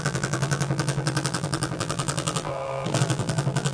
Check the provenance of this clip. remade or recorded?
remade